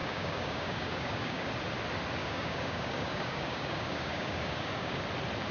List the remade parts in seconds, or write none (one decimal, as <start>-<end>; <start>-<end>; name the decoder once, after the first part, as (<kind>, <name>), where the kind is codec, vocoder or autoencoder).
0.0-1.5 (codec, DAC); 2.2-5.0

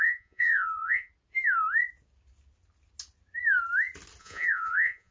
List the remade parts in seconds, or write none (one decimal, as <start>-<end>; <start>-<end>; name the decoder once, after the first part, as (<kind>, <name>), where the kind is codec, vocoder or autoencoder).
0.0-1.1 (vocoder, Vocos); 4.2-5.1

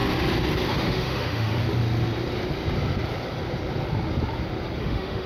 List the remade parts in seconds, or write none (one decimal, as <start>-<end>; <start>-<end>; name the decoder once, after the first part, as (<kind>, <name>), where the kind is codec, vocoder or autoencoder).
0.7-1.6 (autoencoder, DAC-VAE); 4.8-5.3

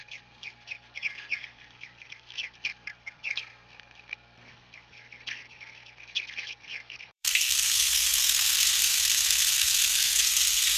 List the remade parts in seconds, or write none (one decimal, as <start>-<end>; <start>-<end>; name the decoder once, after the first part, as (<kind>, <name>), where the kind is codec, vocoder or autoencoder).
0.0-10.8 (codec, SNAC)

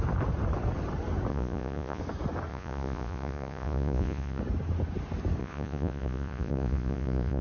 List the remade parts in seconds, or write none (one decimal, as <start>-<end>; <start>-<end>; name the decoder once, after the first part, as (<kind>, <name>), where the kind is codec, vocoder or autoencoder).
1.3-2.0 (vocoder, Vocos); 2.5-4.4; 5.4-7.4

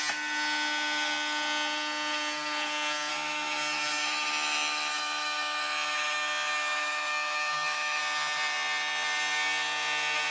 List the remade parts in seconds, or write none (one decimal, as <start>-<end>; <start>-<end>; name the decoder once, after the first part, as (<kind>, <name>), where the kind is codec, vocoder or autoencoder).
3.1-8.0 (autoencoder, DAC-VAE)

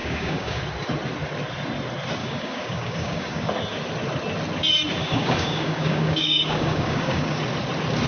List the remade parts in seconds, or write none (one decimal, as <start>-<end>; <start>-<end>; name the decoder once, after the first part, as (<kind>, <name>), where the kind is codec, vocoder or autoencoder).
0.0-0.6 (codec, DAC); 2.2-3.5; 5.0-7.4